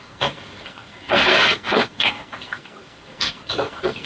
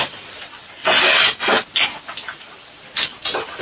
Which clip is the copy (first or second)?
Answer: first